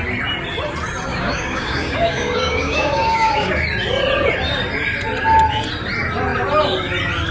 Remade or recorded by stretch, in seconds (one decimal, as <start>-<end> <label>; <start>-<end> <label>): 0.0-1.1 recorded; 1.1-3.5 remade; 3.5-7.3 recorded